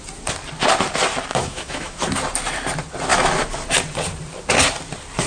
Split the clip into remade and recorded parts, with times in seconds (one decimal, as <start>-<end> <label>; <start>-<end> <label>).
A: 0.0-1.3 recorded; 1.3-2.0 remade; 2.0-5.3 recorded